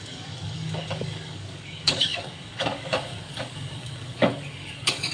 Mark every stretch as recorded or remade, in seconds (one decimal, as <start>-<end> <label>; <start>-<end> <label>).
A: 0.0-5.1 remade